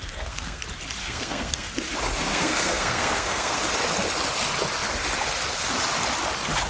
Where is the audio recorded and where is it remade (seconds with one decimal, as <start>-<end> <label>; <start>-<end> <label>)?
0.0-0.6 remade; 0.6-1.0 recorded; 1.0-1.7 remade; 1.7-2.3 recorded; 2.3-3.6 remade; 3.6-6.7 recorded